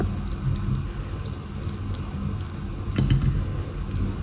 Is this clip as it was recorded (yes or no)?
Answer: yes